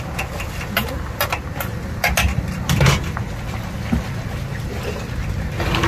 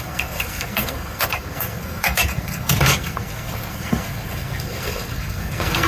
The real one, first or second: first